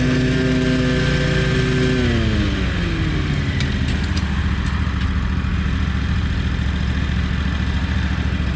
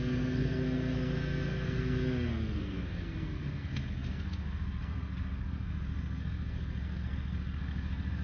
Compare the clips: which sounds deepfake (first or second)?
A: second